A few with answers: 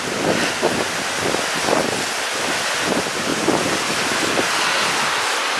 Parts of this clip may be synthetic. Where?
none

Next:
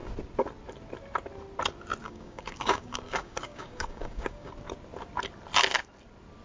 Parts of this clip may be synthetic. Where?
2.0-4.5 (codec, DAC)

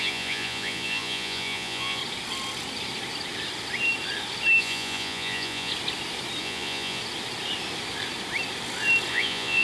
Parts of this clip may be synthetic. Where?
0.0-2.0 (vocoder, Vocos); 4.6-5.7; 6.4-7.0; 9.1-9.6

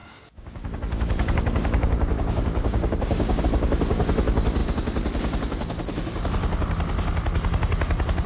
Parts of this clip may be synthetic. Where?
0.0-3.4 (codec, DAC)